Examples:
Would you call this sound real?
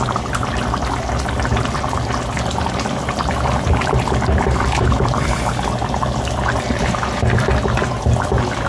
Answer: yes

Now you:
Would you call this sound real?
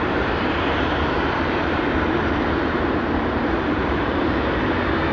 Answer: no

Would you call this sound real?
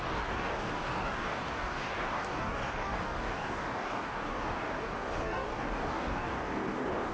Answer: no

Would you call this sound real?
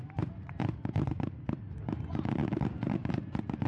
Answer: no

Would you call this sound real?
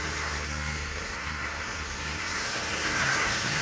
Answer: no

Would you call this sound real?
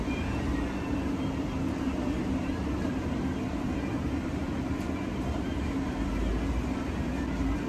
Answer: yes